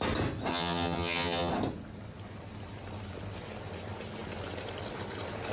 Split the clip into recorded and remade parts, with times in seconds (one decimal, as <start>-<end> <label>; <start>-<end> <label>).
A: 0.0-0.5 recorded; 0.5-1.5 remade; 1.5-5.5 recorded